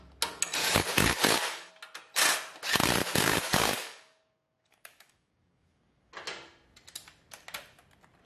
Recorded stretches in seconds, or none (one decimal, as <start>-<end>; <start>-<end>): 0.0-0.6; 1.7-3.0; 6.1-8.3